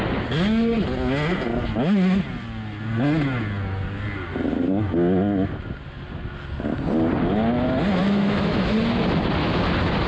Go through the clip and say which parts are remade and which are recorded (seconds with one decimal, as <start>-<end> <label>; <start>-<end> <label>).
0.0-8.0 recorded; 8.0-8.7 remade; 8.7-10.1 recorded